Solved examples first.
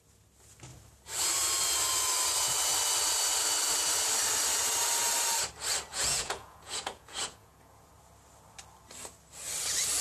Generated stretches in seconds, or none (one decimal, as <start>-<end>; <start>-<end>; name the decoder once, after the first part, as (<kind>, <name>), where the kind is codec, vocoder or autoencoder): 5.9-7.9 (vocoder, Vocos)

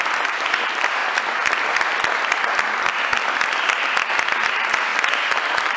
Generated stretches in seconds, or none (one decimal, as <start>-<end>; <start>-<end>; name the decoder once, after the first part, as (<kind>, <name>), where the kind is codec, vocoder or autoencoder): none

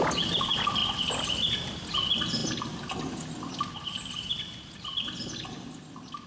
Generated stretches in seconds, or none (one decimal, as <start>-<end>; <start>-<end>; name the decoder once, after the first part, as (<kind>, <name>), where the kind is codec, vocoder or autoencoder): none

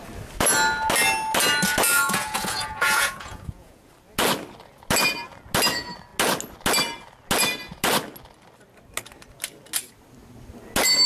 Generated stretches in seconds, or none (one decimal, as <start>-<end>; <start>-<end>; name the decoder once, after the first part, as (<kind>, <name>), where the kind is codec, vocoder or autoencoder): 1.9-3.9 (vocoder, Vocos)